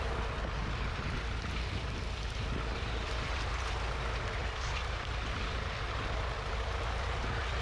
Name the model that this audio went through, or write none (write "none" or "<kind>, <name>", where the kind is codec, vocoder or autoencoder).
vocoder, BigVGAN v2